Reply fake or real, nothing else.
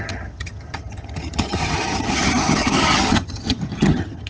fake